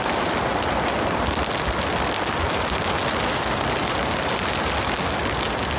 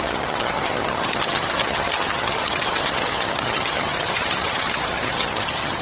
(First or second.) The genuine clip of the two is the first